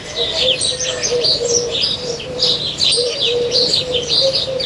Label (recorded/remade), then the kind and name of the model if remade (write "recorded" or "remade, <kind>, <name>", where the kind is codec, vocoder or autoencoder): remade, vocoder, BigVGAN v2